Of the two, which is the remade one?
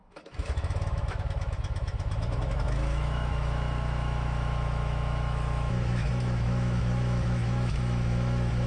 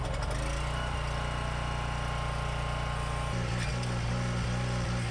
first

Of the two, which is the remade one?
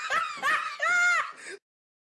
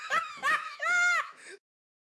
second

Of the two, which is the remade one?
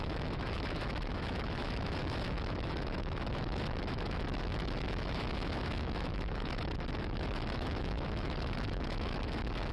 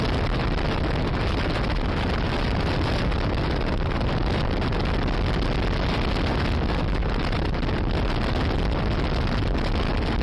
first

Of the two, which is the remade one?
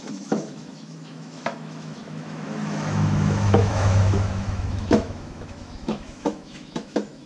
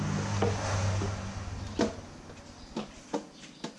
first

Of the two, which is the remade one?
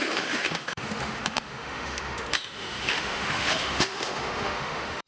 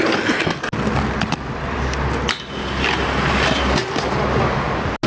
first